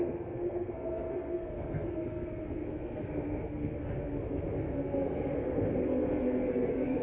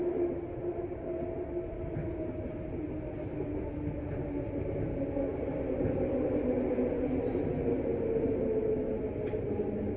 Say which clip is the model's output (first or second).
first